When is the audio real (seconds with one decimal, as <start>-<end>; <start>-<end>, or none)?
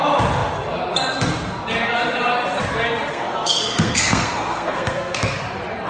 0.0-3.1; 5.4-5.9